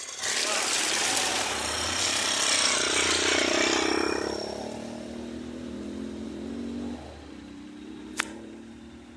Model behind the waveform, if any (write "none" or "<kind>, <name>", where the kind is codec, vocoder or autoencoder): none